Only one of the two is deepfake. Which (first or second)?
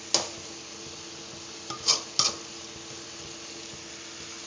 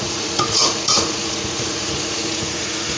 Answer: second